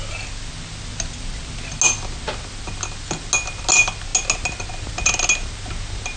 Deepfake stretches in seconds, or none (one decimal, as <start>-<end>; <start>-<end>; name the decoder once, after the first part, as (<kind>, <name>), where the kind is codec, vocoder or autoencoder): none

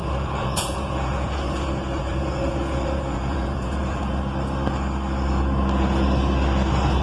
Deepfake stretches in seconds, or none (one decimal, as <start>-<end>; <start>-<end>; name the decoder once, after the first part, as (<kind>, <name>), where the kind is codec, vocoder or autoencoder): 0.0-4.2 (vocoder, Vocos)